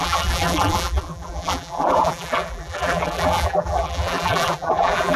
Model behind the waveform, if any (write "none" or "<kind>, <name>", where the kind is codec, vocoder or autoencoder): vocoder, BigVGAN v2